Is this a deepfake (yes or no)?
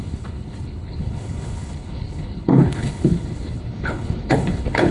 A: yes